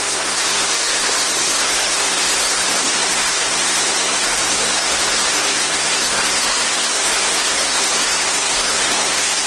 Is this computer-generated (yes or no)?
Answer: yes